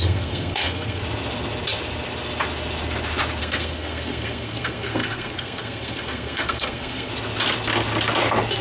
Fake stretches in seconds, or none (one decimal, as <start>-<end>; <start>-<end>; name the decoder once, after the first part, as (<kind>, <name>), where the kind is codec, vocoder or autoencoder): 0.0-1.0 (codec, SNAC); 3.4-7.1